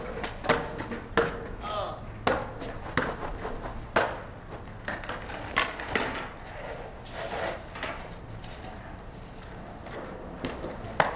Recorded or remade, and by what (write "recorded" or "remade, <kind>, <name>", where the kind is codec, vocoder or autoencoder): recorded